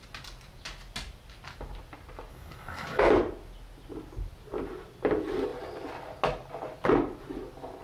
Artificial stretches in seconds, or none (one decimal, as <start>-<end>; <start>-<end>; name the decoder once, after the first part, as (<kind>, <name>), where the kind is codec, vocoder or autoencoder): 2.3-3.0 (codec, DAC)